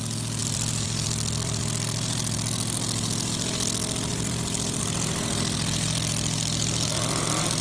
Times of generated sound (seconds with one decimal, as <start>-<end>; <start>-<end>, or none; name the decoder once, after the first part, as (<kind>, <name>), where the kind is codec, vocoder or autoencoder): 0.4-1.6 (vocoder, BigVGAN v2); 4.1-4.8